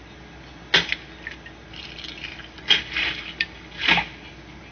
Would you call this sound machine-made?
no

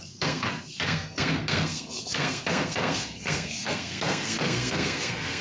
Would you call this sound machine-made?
yes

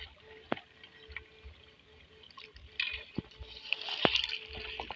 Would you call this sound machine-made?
no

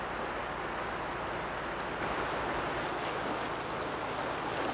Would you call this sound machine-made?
no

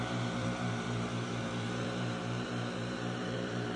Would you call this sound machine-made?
yes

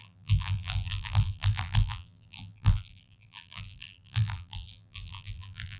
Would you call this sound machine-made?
yes